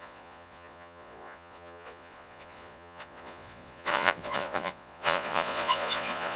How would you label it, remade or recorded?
remade